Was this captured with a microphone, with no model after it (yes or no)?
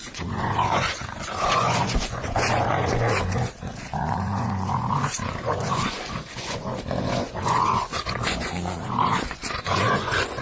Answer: no